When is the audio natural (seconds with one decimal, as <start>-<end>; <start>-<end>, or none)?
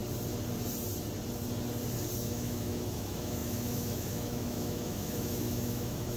0.0-2.2